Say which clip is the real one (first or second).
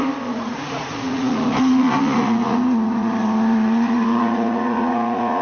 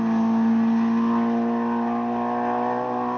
second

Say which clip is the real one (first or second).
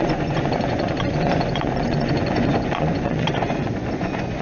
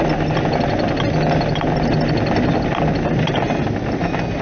second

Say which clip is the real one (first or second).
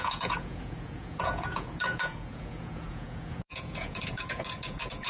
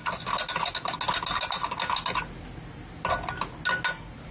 second